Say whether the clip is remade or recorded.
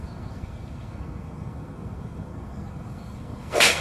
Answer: remade